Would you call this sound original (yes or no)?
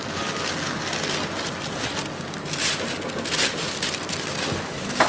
yes